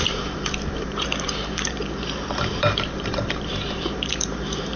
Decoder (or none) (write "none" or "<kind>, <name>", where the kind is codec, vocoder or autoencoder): vocoder, BigVGAN v2